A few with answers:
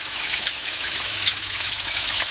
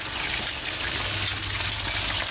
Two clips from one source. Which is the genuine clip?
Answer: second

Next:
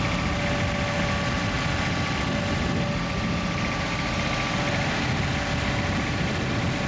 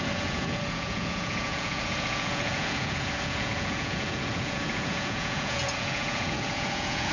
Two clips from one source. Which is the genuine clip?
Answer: first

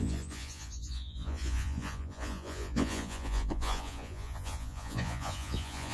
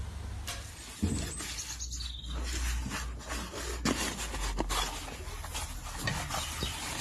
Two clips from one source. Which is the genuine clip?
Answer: second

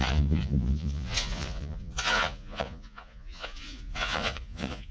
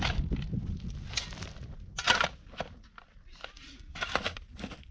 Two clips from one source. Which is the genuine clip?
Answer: second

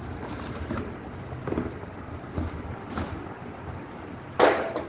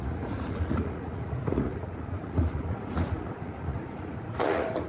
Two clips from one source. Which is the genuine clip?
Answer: first